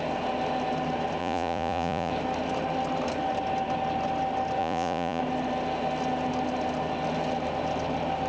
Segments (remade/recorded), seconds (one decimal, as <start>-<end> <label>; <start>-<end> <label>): 0.0-1.2 recorded; 1.2-2.1 remade; 2.1-4.6 recorded; 4.6-5.2 remade; 5.2-8.3 recorded

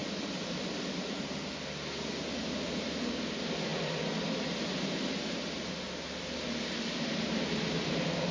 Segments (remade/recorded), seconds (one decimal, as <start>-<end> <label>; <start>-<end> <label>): 0.0-8.3 recorded